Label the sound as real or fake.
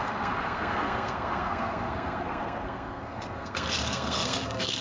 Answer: fake